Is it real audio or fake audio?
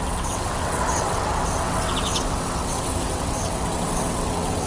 fake